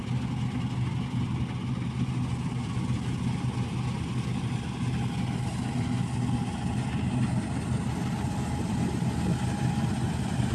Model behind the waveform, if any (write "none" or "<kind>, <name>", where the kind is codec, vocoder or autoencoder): none